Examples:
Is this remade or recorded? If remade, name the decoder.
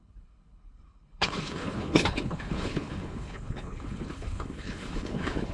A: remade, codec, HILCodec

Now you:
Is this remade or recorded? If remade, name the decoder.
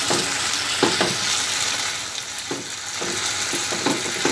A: recorded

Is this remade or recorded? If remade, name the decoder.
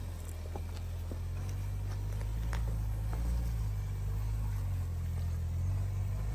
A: recorded